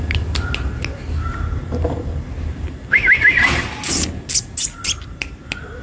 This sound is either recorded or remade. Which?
recorded